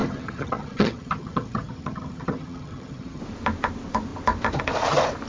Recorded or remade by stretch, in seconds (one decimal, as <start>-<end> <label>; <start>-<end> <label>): 0.0-3.2 remade; 3.2-5.3 recorded